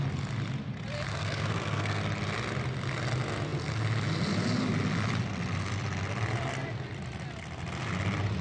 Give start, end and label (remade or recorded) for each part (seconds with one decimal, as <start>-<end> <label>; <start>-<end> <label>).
0.0-1.1 recorded; 1.1-2.0 remade; 2.0-8.4 recorded